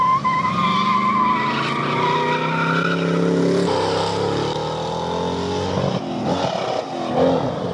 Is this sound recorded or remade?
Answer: recorded